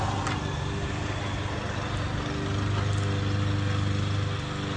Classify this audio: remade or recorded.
recorded